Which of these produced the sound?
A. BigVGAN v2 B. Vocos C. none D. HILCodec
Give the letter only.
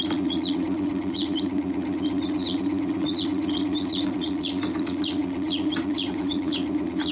B